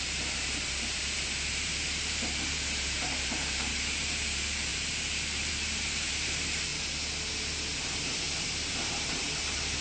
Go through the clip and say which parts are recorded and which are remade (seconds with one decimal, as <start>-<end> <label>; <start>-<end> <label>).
0.0-6.7 remade; 6.7-9.1 recorded; 9.1-9.8 remade